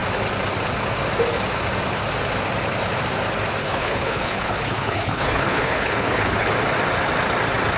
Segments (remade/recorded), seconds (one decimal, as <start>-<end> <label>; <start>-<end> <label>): 0.0-3.6 recorded; 3.6-6.5 remade; 6.5-7.8 recorded